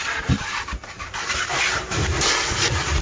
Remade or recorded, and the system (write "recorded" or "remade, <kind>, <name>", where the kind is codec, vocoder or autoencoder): recorded